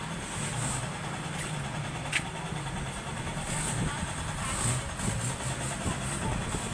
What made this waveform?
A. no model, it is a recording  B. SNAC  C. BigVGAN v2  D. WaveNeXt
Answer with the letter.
A